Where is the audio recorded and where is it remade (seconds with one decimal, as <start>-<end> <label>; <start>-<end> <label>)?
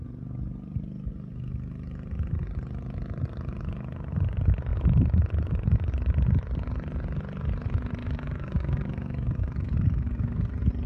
0.0-8.0 recorded; 8.0-10.4 remade; 10.4-10.9 recorded